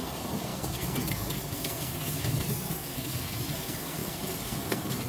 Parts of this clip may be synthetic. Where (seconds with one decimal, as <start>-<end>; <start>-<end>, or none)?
0.0-5.1